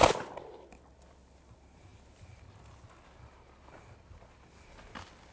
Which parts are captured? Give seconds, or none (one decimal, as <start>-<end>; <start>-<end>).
0.0-5.3